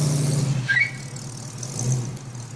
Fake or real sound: real